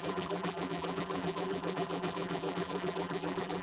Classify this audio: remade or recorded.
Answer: remade